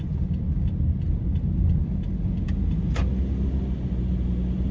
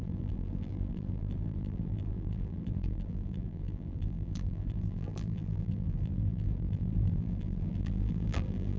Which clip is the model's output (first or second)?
second